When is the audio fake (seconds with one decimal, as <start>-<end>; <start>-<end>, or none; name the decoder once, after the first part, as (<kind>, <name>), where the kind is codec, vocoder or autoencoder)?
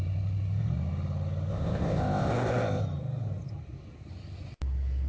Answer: 1.5-2.8 (codec, ZipCodec)